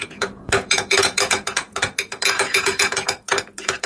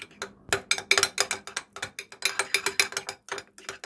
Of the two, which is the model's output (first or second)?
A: first